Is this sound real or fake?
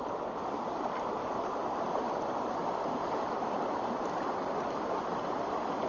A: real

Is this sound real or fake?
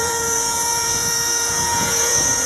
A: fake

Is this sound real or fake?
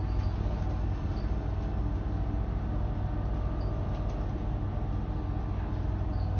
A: real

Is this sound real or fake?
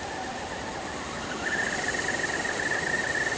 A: real